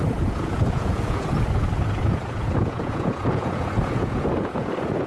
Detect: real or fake fake